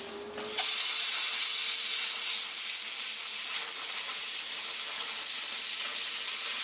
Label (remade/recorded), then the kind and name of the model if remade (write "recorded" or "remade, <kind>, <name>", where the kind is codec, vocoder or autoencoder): recorded